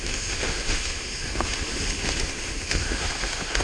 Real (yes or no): no